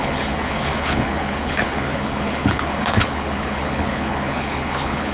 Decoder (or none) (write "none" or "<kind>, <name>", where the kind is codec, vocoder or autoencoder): codec, HILCodec